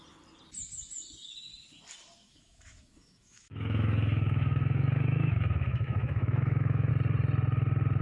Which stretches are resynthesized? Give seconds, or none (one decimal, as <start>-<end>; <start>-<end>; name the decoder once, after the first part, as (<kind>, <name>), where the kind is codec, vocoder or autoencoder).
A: 2.2-6.9 (autoencoder, DAC-VAE)